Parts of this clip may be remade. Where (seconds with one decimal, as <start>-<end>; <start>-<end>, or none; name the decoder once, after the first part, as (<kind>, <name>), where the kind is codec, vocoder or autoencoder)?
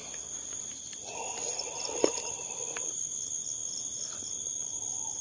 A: none